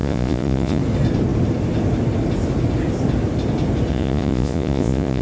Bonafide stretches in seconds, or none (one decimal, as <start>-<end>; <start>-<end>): 0.8-3.9